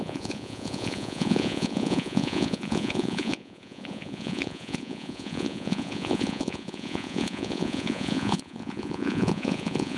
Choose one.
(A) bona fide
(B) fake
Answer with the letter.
B